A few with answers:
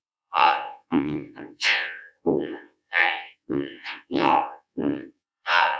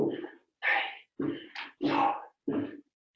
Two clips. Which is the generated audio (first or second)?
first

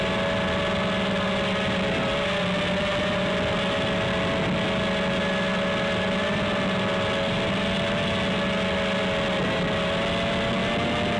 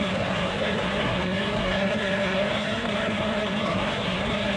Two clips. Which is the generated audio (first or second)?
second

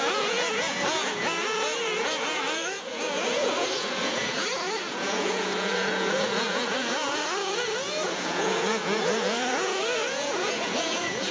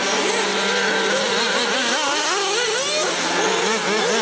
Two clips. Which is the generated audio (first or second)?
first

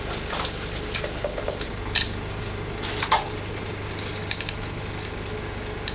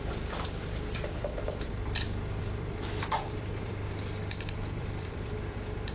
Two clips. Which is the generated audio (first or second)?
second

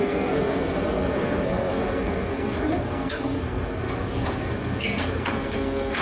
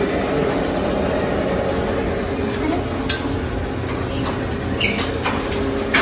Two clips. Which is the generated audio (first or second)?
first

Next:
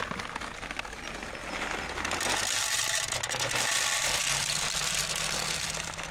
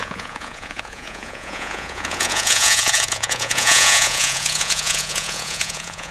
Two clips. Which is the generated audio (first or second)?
second